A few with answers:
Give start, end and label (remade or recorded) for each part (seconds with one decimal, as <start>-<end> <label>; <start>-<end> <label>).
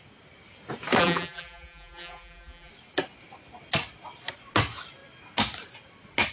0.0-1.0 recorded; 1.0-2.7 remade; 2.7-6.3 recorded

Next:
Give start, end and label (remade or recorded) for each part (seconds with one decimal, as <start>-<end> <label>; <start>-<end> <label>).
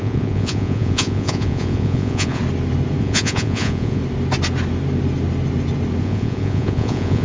0.0-2.4 remade; 2.4-3.0 recorded; 3.0-4.0 remade; 4.0-6.0 recorded; 6.0-7.2 remade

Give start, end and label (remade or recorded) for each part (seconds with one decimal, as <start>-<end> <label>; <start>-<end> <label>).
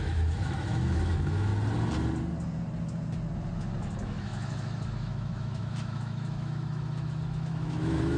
0.0-1.5 remade; 1.5-3.8 recorded; 3.8-8.2 remade